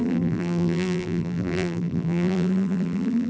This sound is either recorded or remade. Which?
remade